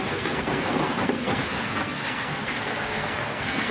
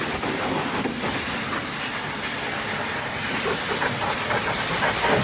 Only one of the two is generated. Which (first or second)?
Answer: first